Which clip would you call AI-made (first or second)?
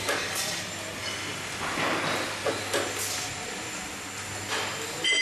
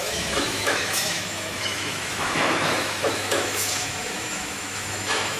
second